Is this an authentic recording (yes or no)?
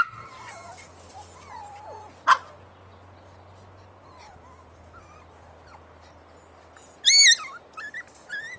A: yes